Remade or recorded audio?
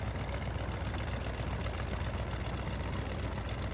recorded